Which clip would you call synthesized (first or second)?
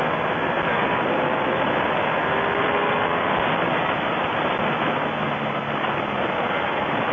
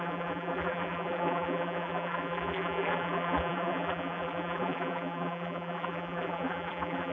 second